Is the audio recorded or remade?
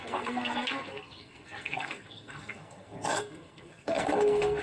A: remade